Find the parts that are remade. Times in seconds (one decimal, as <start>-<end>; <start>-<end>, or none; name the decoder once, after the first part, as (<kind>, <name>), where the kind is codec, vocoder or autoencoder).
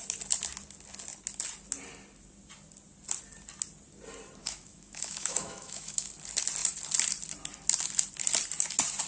4.4-6.1 (autoencoder, DAC-VAE)